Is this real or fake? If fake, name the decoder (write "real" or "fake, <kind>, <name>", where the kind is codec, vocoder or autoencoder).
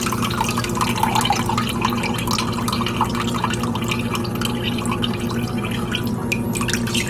real